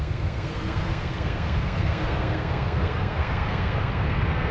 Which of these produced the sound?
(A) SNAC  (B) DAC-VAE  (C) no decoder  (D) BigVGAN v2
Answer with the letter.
A